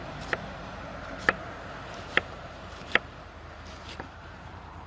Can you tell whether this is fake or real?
fake